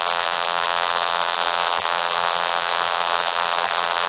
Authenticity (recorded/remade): remade